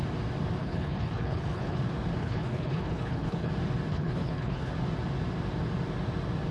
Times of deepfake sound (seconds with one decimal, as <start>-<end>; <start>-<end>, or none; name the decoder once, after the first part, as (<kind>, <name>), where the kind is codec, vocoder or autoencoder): 0.6-1.8 (codec, HILCodec); 2.2-3.5; 3.9-4.7